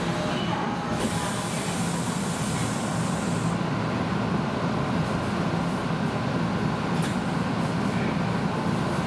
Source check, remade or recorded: recorded